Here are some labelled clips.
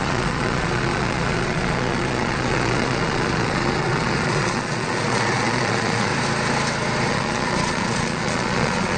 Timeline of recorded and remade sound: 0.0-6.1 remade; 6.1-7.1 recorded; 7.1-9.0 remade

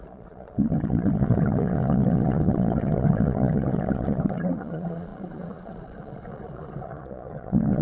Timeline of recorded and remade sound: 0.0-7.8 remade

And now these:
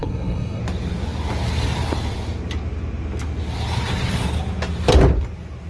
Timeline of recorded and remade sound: 0.0-0.6 remade; 0.6-5.7 recorded

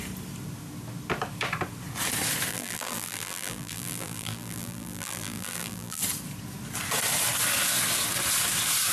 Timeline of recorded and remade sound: 0.0-2.5 recorded; 2.5-6.0 remade; 6.0-8.9 recorded

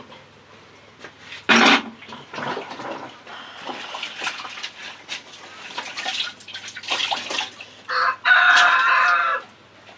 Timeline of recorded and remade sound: 0.0-10.0 recorded

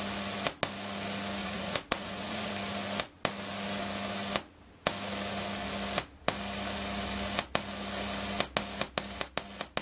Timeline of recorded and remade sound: 0.0-1.4 recorded; 1.4-2.5 remade; 2.5-9.8 recorded

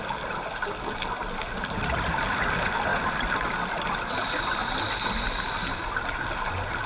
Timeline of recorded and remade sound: 0.0-6.9 recorded

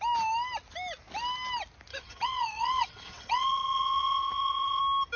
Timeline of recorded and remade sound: 0.0-1.9 recorded; 1.9-4.8 remade; 4.8-5.2 recorded